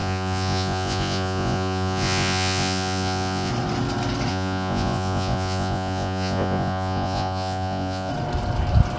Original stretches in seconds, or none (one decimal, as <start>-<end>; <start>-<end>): 3.5-4.3; 8.1-9.0